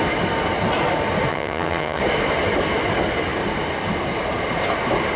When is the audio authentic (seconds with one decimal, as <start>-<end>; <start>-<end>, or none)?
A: 0.0-1.3; 2.0-5.2